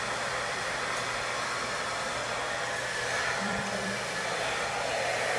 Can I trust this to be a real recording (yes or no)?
no